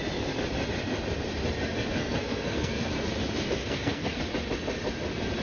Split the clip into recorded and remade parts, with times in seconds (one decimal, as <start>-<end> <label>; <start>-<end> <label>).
0.0-2.0 recorded; 2.0-2.9 remade; 2.9-3.6 recorded; 3.6-4.2 remade; 4.2-5.4 recorded